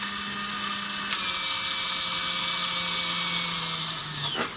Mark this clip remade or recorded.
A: recorded